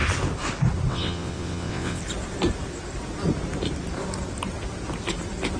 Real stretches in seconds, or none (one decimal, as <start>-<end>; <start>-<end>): 0.0-0.9; 2.0-5.6